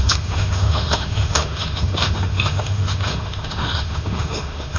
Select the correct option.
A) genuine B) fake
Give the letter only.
B